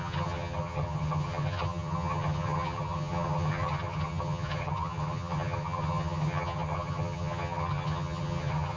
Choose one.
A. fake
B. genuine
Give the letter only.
A